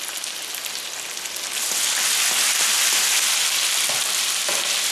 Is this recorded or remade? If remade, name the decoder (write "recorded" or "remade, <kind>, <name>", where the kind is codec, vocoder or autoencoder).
recorded